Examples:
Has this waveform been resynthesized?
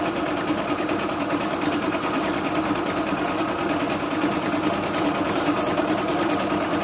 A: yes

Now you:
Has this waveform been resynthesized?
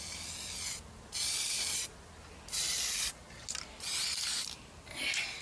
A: no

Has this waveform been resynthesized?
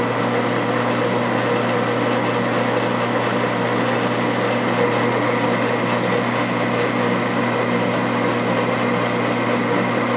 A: no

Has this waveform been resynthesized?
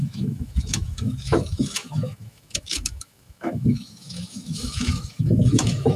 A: yes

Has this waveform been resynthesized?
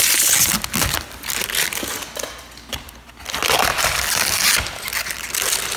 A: no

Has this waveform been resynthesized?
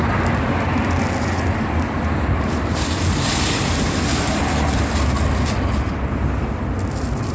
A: yes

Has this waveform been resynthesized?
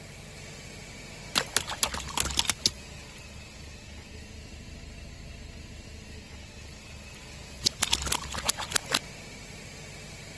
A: no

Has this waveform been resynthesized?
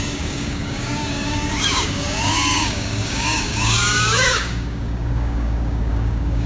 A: yes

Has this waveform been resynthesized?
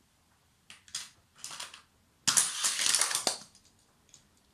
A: no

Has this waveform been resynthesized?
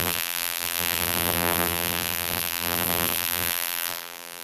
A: yes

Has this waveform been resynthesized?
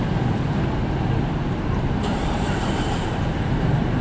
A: yes